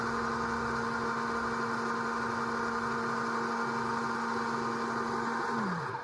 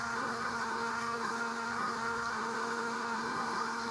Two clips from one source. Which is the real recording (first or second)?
first